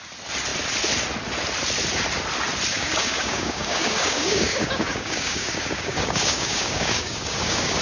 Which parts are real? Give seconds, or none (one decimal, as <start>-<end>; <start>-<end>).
0.0-2.7